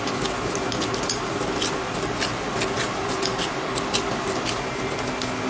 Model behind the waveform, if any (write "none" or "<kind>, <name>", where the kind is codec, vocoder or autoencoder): none